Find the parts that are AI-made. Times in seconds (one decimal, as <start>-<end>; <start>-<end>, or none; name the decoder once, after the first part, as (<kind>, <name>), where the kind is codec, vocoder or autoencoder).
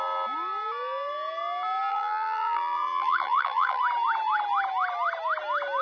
1.9-3.8 (vocoder, BigVGAN v2)